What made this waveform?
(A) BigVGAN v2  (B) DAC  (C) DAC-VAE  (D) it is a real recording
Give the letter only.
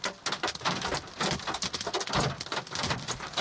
A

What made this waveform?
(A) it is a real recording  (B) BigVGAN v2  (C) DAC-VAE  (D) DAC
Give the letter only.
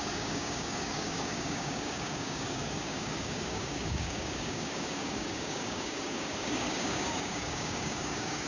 D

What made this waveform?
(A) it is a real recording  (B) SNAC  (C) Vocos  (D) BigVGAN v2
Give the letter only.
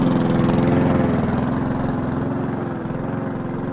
A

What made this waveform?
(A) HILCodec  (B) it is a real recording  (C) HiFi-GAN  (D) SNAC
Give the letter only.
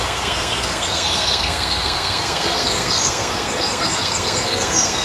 D